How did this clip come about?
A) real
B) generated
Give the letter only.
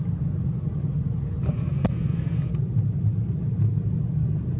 A